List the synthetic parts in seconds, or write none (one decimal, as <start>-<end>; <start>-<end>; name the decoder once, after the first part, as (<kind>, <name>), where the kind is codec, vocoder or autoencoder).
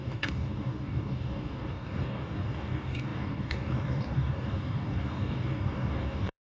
0.0-6.4 (codec, DAC)